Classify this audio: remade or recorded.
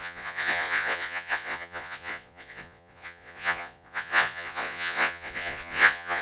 remade